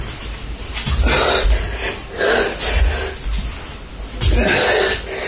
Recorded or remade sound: recorded